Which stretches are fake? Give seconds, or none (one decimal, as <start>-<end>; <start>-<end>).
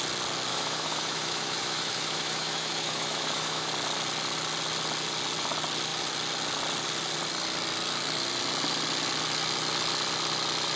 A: 0.5-3.7